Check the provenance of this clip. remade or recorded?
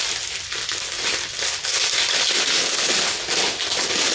recorded